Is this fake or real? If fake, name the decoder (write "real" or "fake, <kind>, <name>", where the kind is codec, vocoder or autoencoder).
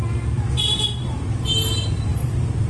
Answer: real